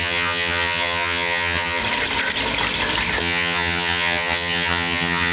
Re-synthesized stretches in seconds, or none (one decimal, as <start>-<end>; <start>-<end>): 0.0-1.8; 3.2-5.3